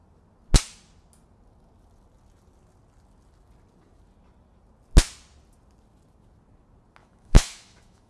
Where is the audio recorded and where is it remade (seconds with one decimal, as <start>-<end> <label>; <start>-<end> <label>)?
0.0-7.0 recorded; 7.0-8.1 remade